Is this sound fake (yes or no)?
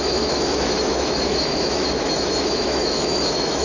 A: yes